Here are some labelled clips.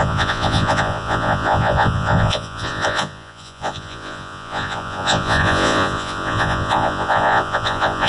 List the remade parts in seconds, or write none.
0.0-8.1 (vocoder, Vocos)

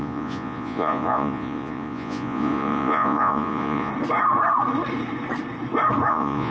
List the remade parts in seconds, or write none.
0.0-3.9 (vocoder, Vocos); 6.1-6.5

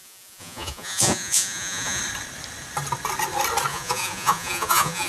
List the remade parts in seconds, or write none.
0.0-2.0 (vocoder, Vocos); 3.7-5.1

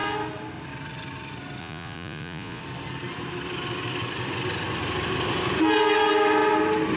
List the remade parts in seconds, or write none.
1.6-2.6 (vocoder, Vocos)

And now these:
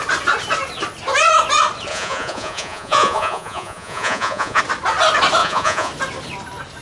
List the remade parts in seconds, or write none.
1.9-4.6 (vocoder, Vocos); 5.4-5.9

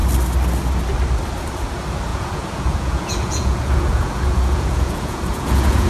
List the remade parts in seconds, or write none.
2.1-5.9 (vocoder, Vocos)